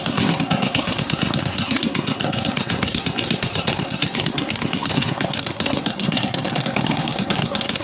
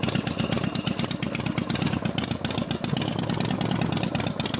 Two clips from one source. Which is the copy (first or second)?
first